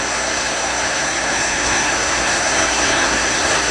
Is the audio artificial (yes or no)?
yes